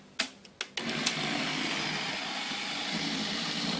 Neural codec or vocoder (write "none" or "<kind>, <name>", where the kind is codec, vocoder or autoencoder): none